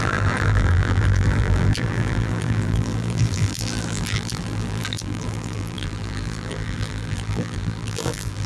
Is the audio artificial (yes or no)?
yes